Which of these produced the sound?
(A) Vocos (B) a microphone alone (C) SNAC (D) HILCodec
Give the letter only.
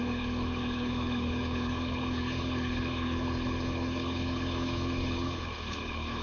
D